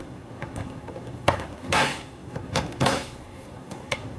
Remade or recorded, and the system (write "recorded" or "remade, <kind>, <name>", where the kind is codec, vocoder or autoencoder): remade, codec, SNAC